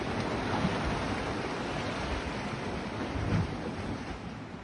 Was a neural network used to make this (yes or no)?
no